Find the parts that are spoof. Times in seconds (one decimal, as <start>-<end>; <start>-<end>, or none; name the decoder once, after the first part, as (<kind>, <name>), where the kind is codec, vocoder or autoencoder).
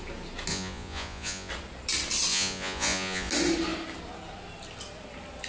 0.5-1.5 (vocoder, Vocos); 2.3-3.3